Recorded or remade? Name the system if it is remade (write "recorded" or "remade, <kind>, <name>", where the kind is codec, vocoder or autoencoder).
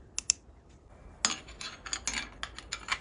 recorded